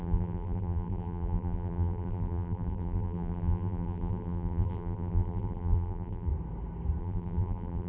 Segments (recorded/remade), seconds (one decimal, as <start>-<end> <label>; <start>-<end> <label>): 0.0-6.3 remade; 6.3-7.0 recorded; 7.0-7.9 remade